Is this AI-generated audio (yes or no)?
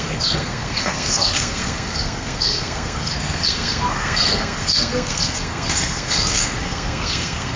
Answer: yes